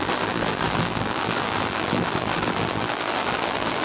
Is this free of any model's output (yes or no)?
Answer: no